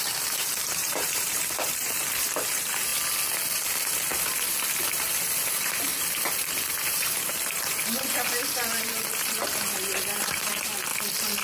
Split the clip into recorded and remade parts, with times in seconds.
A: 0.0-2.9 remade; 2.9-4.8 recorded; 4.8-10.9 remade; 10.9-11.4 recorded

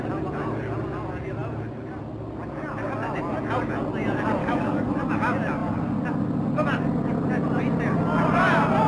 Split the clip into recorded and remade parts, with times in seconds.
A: 0.0-4.4 recorded; 4.4-4.9 remade; 4.9-8.9 recorded

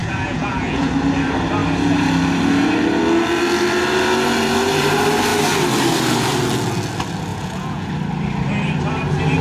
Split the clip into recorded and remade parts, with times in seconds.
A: 0.0-0.9 remade; 0.9-7.3 recorded; 7.3-7.9 remade; 7.9-9.4 recorded

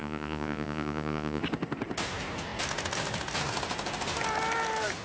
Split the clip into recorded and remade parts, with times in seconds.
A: 0.0-1.4 remade; 1.4-5.0 recorded